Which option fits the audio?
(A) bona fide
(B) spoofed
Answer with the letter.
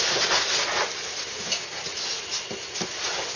A